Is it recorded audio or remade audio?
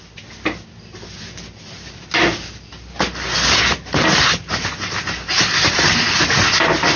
recorded